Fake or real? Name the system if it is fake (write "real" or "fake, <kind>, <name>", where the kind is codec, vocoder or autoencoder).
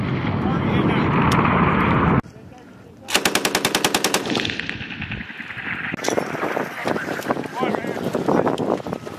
real